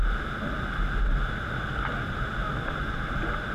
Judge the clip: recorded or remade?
recorded